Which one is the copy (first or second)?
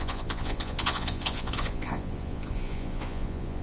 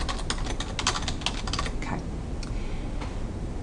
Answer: first